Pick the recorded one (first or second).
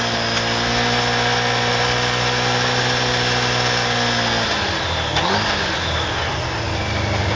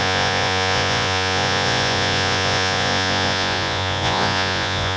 first